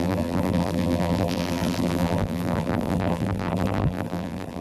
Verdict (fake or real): fake